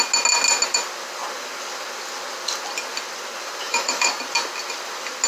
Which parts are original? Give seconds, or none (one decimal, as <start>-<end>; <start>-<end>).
0.0-3.6; 4.1-5.3